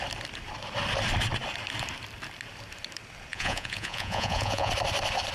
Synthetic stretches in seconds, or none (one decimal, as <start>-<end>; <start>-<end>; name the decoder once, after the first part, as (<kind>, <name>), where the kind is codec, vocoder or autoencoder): 3.3-4.7 (vocoder, Vocos)